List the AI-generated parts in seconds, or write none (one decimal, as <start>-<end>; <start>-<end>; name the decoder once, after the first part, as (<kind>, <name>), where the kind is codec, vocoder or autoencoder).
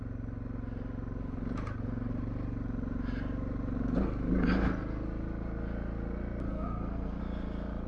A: 6.5-7.2 (codec, SNAC)